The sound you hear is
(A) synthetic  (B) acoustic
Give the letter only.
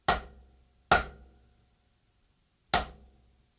B